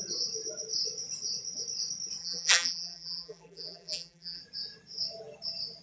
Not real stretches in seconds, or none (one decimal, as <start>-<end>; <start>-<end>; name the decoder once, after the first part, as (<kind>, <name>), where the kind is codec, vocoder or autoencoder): 2.2-4.4 (vocoder, BigVGAN v2)